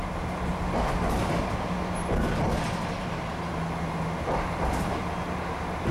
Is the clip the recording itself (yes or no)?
yes